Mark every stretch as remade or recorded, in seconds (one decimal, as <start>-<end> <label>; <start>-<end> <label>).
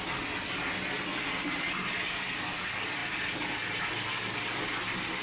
0.0-5.2 recorded